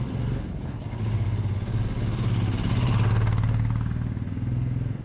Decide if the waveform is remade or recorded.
recorded